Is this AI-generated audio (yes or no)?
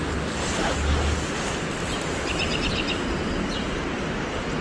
no